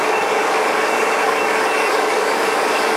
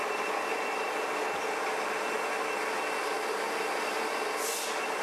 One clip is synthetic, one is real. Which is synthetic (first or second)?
first